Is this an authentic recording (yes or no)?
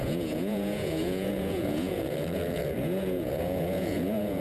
no